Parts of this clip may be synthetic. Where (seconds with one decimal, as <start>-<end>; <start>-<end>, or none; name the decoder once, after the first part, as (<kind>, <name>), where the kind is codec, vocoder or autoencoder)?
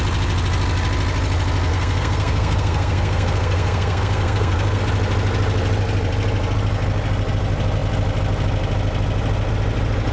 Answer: 1.7-4.8 (codec, SNAC)